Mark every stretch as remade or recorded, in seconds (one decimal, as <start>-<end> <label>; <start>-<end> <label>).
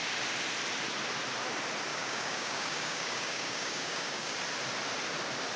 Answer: 0.0-1.9 recorded; 1.9-4.4 remade; 4.4-5.6 recorded